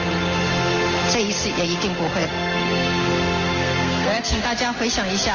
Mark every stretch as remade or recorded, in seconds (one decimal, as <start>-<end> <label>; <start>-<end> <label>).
0.0-2.2 recorded; 2.2-4.4 remade; 4.4-5.3 recorded